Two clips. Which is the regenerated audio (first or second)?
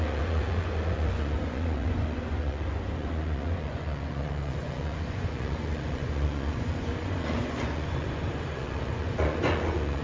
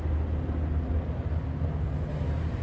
first